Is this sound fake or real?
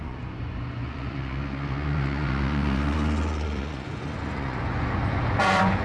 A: fake